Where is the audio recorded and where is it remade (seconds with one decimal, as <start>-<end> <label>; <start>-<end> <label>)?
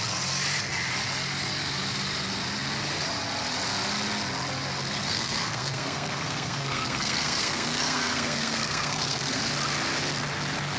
0.0-5.0 recorded; 5.0-9.4 remade; 9.4-10.8 recorded